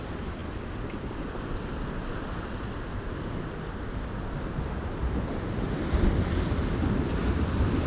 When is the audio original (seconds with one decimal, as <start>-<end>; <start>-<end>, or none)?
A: 0.0-7.9